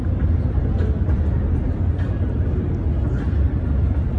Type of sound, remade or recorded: recorded